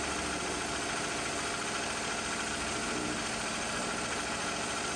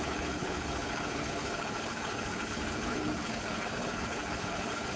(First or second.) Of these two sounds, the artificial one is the second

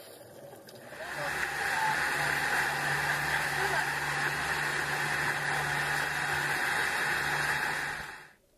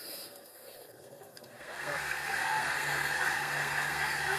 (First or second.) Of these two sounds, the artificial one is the second